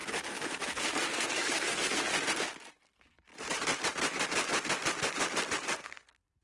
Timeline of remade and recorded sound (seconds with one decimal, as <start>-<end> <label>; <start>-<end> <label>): 0.0-0.7 recorded; 0.7-2.1 remade; 2.1-2.7 recorded; 2.7-3.3 remade; 3.3-5.8 recorded; 5.8-6.4 remade